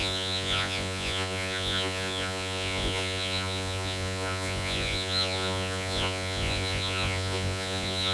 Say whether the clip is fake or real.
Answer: fake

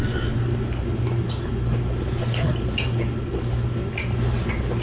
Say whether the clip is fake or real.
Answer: real